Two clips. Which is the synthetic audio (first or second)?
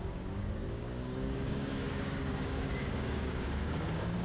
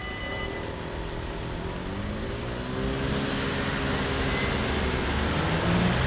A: first